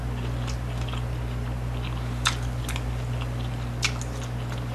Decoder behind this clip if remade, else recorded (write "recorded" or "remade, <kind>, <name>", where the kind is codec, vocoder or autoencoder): recorded